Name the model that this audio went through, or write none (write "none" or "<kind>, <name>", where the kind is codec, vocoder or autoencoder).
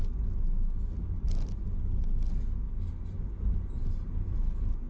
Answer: none